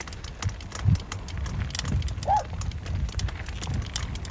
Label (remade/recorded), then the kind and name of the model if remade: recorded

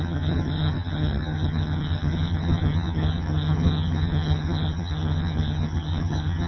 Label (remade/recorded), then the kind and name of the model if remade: remade, vocoder, HiFi-GAN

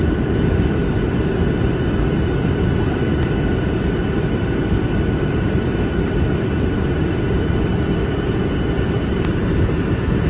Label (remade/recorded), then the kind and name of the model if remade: remade, vocoder, BigVGAN v2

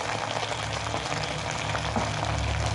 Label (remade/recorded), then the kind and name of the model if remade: recorded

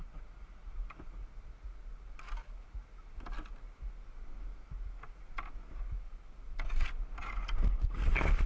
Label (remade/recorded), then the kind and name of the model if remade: recorded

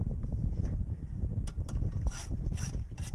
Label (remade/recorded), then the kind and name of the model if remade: remade, vocoder, BigVGAN v2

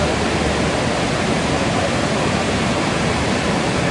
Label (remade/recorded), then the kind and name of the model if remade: recorded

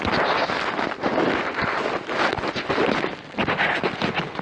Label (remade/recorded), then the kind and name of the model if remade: recorded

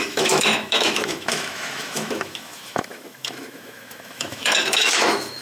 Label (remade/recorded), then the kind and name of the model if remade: remade, autoencoder, DAC-VAE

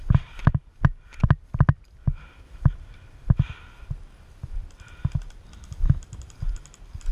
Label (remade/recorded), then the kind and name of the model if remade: recorded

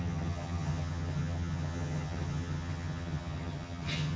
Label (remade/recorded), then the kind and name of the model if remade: remade, vocoder, HiFi-GAN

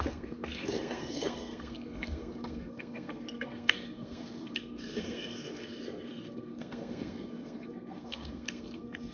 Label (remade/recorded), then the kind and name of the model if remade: remade, codec, SNAC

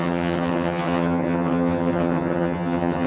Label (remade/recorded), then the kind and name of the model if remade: remade, vocoder, HiFi-GAN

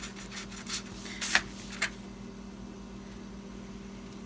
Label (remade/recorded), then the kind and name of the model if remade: recorded